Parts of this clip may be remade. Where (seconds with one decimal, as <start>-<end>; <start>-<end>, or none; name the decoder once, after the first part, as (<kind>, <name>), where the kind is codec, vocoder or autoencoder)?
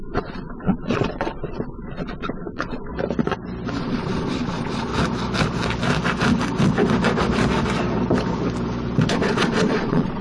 0.0-2.9 (vocoder, Vocos); 3.8-4.9; 9.1-10.2